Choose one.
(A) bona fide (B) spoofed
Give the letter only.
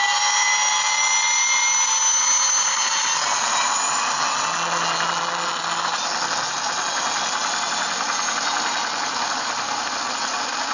A